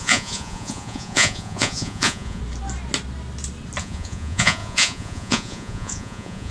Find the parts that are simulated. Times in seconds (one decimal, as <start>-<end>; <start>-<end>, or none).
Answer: 0.0-2.4; 3.8-6.5